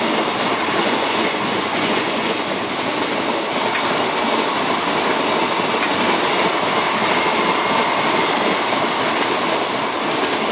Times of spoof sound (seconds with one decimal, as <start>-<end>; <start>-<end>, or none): 0.8-2.5